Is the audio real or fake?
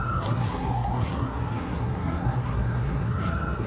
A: fake